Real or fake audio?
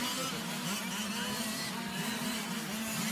real